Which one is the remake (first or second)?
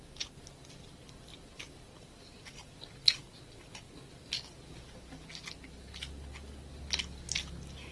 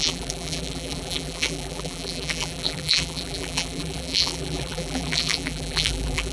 second